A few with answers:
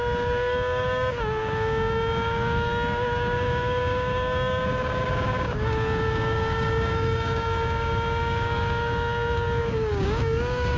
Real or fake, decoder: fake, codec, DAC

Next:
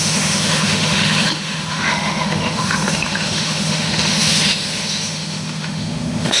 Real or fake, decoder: fake, autoencoder, DAC-VAE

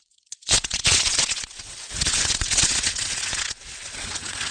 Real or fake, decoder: fake, vocoder, WaveNeXt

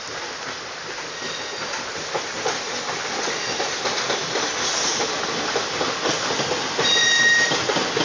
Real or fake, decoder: real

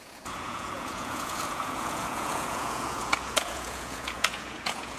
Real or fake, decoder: fake, vocoder, Vocos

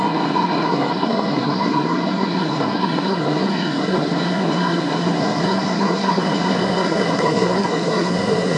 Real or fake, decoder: fake, codec, SNAC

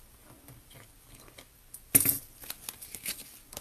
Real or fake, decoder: real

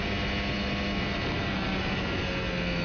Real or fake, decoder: real